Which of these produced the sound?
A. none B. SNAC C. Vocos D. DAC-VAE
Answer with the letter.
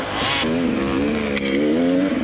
A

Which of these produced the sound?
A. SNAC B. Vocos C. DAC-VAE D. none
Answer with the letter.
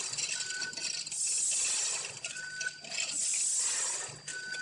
D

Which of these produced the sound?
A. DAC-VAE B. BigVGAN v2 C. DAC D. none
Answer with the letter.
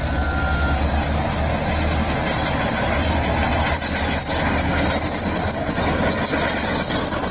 D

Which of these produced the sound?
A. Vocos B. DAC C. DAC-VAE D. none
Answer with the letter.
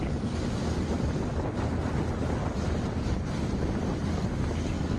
D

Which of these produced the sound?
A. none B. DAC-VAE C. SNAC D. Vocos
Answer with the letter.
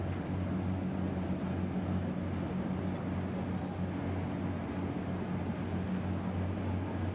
A